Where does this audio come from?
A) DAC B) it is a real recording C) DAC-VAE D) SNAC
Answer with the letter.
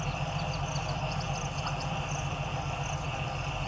B